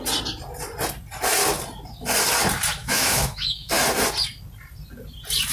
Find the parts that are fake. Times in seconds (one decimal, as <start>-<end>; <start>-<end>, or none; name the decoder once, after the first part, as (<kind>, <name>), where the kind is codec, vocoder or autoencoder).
2.8-3.7 (autoencoder, DAC-VAE)